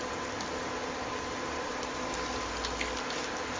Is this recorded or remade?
recorded